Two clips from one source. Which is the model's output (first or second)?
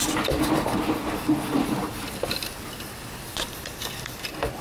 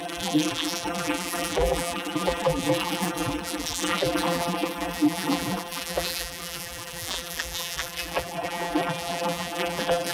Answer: second